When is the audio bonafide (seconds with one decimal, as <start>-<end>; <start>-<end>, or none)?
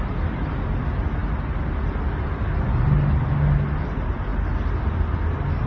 0.0-5.7